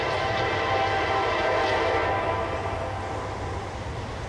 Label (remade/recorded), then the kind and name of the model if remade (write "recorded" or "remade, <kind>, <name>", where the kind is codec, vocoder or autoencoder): recorded